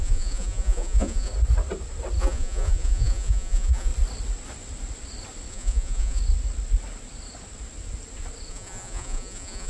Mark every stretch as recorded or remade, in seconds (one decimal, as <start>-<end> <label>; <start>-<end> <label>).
0.0-1.3 remade; 1.3-2.2 recorded; 2.2-3.9 remade; 3.9-5.5 recorded; 5.5-6.2 remade; 6.2-8.5 recorded; 8.5-9.7 remade